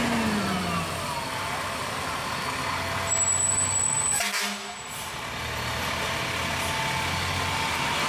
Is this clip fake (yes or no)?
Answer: no